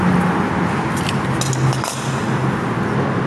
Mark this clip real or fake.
real